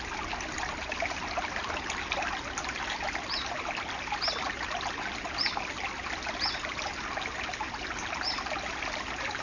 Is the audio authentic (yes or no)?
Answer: yes